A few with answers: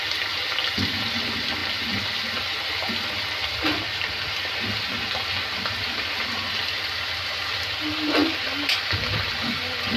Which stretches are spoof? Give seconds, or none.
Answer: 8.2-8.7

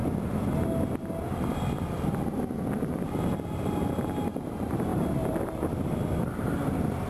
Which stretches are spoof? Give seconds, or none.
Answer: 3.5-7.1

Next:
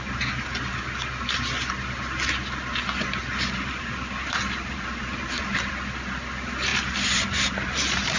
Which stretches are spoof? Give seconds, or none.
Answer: 3.2-5.7; 6.7-8.2